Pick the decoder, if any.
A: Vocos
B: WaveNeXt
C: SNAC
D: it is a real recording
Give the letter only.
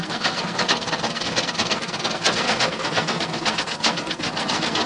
C